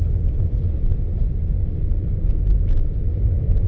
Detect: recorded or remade recorded